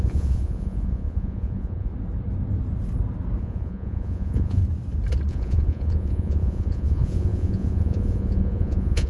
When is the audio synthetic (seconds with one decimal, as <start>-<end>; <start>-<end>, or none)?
0.0-1.9; 3.4-4.6; 5.3-9.1

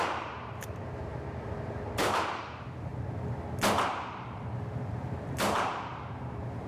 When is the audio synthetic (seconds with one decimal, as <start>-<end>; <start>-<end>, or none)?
0.0-2.9; 3.9-6.7

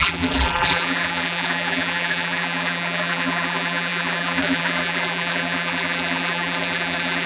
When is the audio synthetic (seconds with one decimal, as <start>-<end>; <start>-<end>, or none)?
0.0-7.3

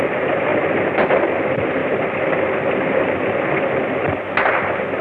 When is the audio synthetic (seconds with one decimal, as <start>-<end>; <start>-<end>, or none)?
0.5-1.1

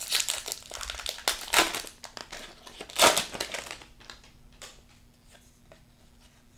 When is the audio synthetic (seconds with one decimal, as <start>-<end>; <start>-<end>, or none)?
none

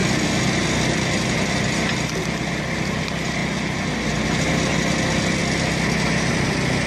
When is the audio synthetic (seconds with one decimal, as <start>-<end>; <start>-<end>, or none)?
1.5-3.4; 4.7-5.4; 6.3-6.9

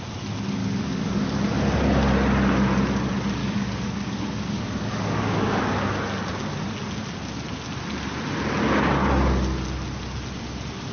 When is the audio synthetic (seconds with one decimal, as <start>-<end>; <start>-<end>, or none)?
0.6-1.2; 3.4-5.6